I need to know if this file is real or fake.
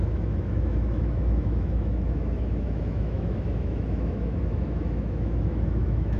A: fake